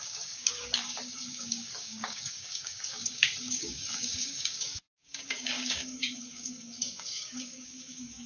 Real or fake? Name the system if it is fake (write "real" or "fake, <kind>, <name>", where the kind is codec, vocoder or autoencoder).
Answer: fake, codec, DAC